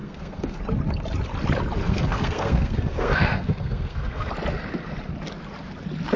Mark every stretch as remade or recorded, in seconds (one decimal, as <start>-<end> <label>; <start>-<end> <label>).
0.0-0.6 remade; 0.6-1.8 recorded; 1.8-4.3 remade; 4.3-6.2 recorded